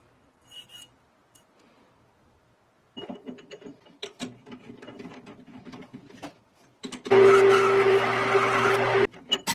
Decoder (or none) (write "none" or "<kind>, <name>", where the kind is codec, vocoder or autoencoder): none